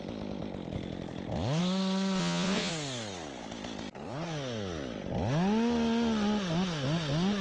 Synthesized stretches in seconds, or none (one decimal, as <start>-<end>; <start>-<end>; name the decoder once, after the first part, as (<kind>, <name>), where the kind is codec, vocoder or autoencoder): 2.2-2.7 (vocoder, Vocos)